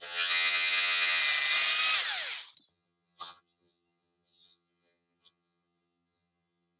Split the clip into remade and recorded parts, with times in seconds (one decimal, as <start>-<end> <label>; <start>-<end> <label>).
0.0-1.2 remade; 1.2-2.7 recorded; 2.7-6.8 remade